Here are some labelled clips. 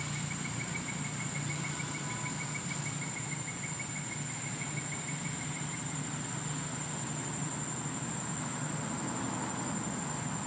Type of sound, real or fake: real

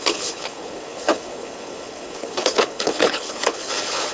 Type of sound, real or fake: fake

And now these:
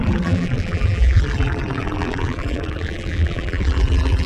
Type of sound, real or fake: fake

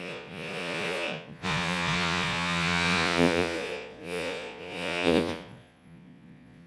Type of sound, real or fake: fake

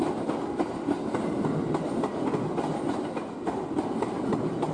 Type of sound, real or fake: real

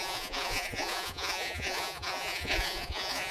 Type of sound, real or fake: fake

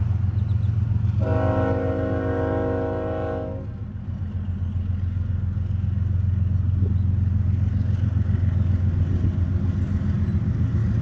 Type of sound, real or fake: real